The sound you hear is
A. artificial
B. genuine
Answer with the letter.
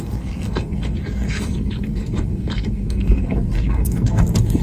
A